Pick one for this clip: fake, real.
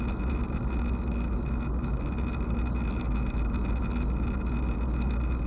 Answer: real